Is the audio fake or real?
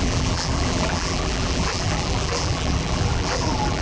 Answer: fake